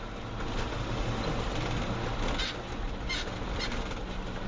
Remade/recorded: recorded